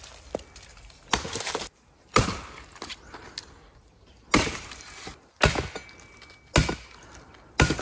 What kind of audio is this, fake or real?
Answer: real